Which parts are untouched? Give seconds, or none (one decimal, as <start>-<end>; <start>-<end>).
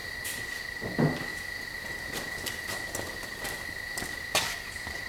0.0-5.1